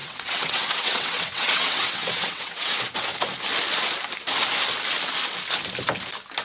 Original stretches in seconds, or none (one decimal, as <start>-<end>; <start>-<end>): 2.8-6.4

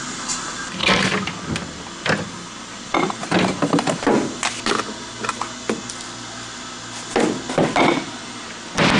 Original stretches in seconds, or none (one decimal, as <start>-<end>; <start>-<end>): 0.0-9.0

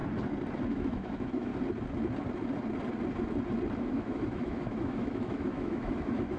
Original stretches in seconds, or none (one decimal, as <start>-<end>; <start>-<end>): 0.0-0.7; 1.5-3.8

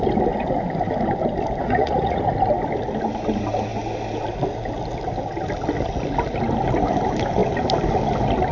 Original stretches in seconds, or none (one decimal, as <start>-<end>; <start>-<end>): 0.0-1.6; 2.2-8.5

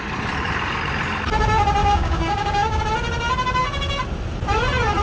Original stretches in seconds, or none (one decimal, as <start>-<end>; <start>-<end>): 0.0-1.8; 2.8-5.0

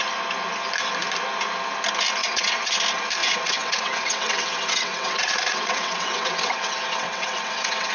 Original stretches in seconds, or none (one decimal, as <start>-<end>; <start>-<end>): 0.0-2.2; 2.7-3.2

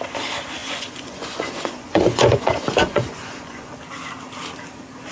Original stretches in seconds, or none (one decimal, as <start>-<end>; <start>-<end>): 0.0-0.6; 3.7-5.1

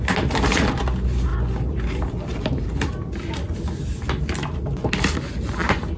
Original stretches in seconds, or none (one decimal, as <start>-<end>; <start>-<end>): 0.0-6.0